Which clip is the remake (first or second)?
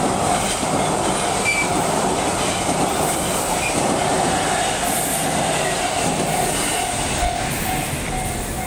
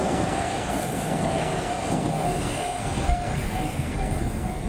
second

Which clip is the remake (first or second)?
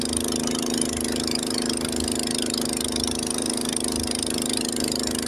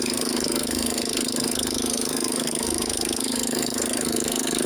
second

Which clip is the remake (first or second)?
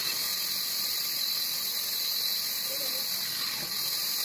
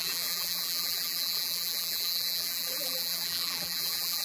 second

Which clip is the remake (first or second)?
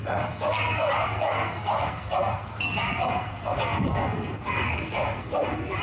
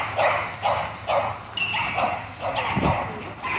first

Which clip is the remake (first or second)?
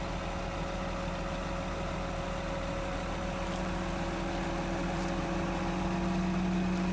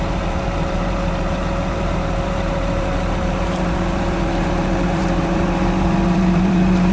second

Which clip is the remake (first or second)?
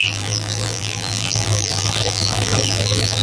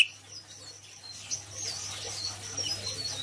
first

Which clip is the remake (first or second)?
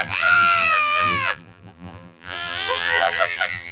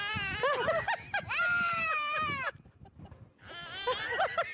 first